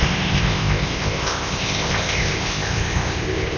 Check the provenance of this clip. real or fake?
fake